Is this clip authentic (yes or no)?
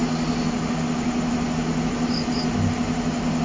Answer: yes